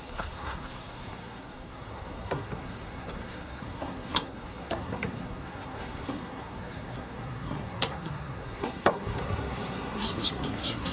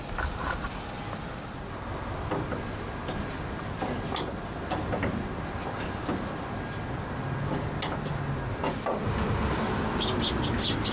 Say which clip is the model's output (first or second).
first